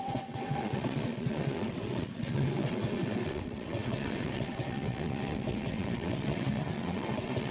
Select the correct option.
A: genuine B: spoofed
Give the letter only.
B